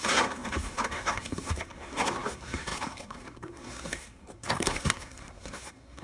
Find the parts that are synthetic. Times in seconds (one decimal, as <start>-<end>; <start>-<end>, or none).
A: 0.0-6.0